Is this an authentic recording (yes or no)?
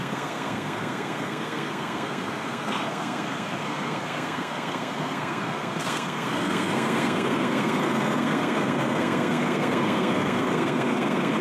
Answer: no